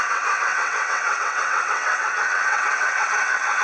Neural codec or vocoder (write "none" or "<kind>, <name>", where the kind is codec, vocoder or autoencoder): vocoder, WaveNeXt